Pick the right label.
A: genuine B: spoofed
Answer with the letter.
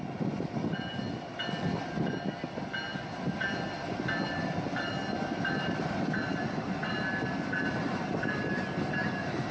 A